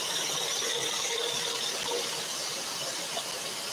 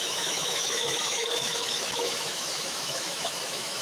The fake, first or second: second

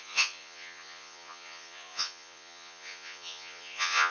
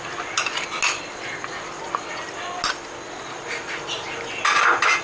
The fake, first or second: first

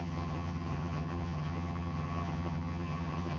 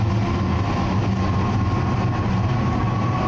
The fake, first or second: first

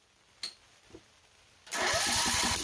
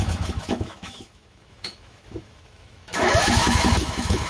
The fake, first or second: second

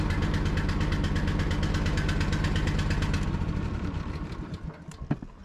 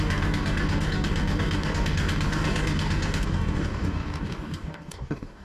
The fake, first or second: second